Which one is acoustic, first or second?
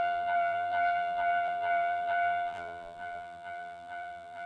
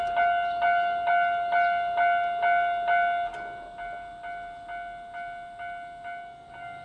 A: second